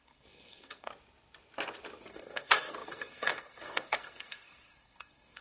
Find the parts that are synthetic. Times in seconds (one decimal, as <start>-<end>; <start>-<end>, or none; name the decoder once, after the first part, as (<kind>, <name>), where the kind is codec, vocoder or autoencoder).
0.0-0.9 (codec, SNAC); 2.1-5.4